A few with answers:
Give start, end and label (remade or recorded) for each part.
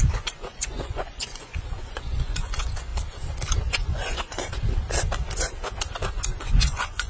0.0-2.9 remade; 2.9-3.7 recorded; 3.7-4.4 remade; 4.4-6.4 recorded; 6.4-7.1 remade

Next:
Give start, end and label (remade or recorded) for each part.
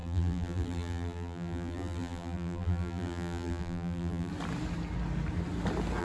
0.0-4.3 remade; 4.3-6.0 recorded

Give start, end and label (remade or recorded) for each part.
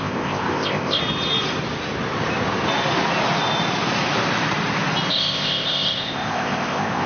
0.0-1.0 remade; 1.0-5.1 recorded; 5.1-7.1 remade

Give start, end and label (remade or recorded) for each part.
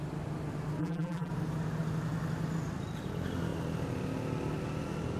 0.0-0.8 recorded; 0.8-1.3 remade; 1.3-5.2 recorded